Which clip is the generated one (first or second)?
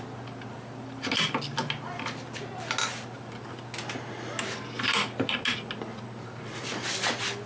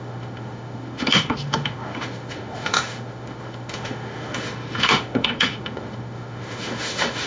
second